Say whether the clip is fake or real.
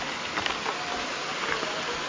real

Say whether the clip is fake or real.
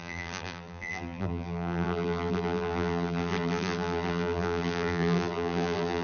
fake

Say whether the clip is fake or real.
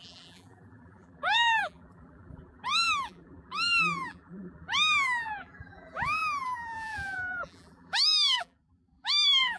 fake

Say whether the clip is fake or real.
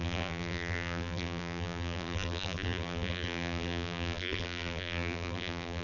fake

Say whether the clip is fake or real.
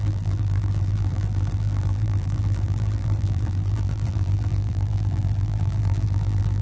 fake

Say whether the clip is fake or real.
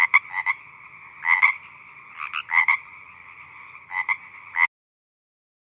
real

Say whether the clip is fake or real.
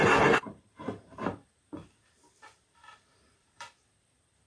fake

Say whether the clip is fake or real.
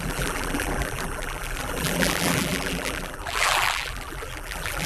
fake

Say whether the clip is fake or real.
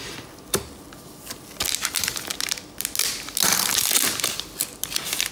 real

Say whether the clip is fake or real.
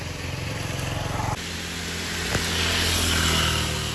real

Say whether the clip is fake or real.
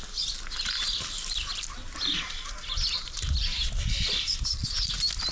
real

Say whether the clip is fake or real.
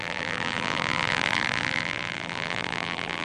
fake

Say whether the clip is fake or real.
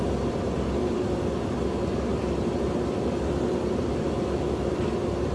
fake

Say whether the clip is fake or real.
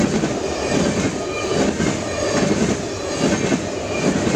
real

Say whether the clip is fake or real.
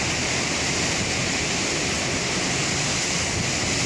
real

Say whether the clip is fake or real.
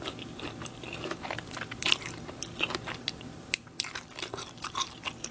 fake